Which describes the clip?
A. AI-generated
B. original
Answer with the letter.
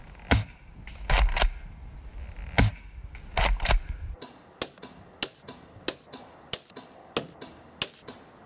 B